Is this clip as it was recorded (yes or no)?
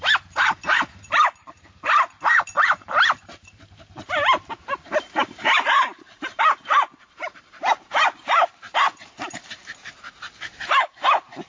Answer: no